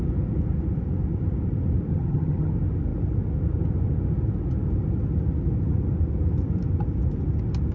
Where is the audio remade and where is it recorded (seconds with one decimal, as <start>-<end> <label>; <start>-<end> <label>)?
0.0-1.9 recorded; 1.9-2.5 remade; 2.5-7.7 recorded